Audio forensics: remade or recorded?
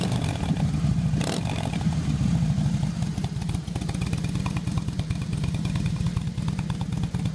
remade